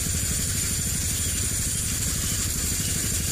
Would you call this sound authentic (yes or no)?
yes